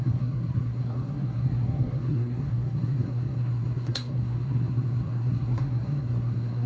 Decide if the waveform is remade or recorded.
remade